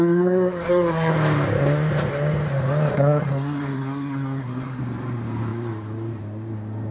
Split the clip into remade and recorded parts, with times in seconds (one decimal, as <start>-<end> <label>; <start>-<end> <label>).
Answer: 0.0-1.1 remade; 1.1-2.9 recorded; 2.9-4.8 remade; 4.8-6.9 recorded